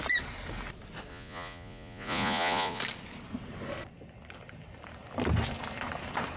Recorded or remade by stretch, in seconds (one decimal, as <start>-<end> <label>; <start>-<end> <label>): 0.0-1.1 recorded; 1.1-2.8 remade; 2.8-6.4 recorded